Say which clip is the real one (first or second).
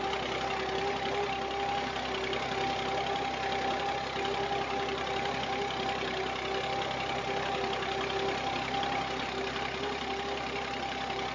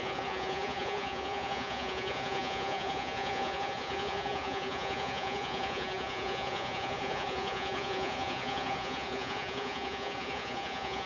first